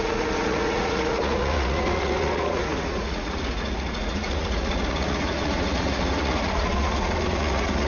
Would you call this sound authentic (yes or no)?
no